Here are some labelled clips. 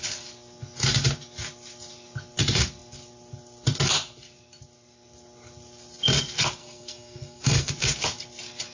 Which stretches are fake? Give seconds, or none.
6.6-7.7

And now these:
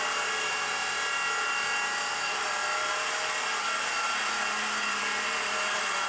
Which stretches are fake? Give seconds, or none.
none